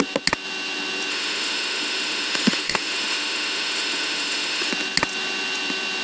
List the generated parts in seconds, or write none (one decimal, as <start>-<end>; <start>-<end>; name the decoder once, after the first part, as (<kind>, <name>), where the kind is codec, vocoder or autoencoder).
1.1-4.7 (autoencoder, DAC-VAE)